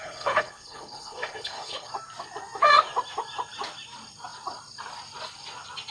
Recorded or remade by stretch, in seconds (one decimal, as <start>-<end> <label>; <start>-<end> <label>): 0.0-1.9 remade; 1.9-5.9 recorded